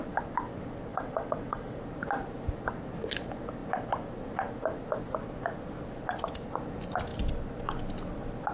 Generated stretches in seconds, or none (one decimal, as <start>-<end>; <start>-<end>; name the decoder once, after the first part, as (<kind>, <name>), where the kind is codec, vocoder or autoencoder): 0.9-1.8 (vocoder, WaveNeXt)